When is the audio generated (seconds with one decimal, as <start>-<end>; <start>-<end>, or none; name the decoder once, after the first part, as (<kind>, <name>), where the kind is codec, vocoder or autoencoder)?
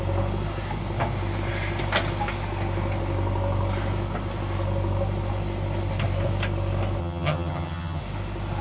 7.0-8.0 (vocoder, HiFi-GAN)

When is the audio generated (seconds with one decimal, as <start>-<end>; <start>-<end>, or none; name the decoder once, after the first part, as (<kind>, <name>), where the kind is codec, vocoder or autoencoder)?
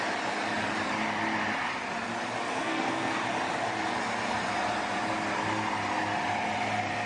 2.6-3.2 (codec, SNAC)